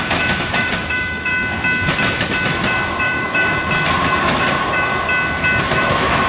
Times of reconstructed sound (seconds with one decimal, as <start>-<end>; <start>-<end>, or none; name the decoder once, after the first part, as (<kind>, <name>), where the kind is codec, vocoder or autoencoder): 0.0-1.3 (autoencoder, DAC-VAE); 2.9-3.6; 4.2-4.9; 5.6-6.3